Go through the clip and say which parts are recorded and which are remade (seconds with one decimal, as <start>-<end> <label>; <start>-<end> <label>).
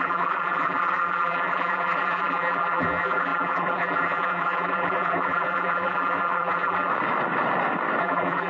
0.0-6.9 remade; 6.9-8.0 recorded; 8.0-8.5 remade